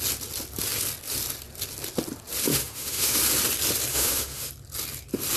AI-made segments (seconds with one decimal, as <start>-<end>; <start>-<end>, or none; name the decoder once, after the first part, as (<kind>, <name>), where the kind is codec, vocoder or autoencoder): 2.5-3.2 (autoencoder, DAC-VAE); 3.9-4.5